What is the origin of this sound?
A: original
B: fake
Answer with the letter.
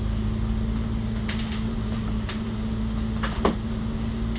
A